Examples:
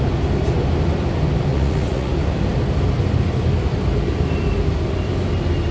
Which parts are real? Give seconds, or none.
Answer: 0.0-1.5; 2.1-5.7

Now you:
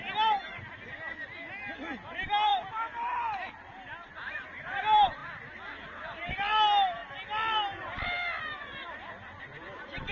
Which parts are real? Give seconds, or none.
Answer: 0.0-10.1

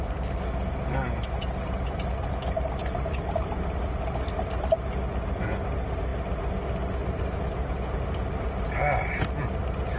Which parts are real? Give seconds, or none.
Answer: 0.0-10.0

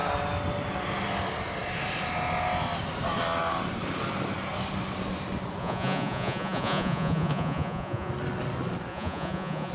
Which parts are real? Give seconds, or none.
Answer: 0.0-5.6; 8.1-8.9